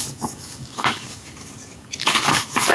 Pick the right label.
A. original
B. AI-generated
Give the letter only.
B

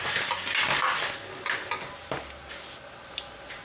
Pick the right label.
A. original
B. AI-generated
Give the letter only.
A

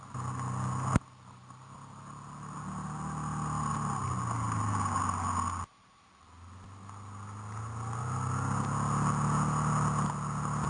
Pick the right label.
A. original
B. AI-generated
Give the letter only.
A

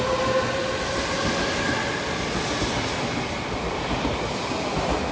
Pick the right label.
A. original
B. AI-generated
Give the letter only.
A